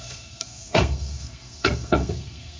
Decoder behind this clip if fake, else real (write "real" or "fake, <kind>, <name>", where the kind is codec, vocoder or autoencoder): fake, codec, SNAC